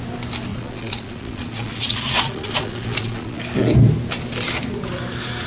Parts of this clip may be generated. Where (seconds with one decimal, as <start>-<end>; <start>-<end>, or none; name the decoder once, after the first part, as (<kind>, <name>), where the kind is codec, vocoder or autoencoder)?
0.5-3.4 (vocoder, Vocos)